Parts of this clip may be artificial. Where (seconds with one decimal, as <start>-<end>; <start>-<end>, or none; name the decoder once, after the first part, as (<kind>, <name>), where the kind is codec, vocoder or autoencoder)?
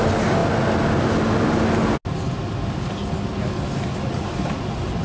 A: none